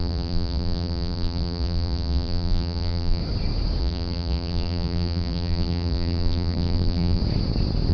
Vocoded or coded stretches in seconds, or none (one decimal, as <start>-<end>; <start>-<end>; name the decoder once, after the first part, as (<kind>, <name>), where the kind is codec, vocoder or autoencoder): 0.0-3.2 (vocoder, BigVGAN v2); 3.8-7.2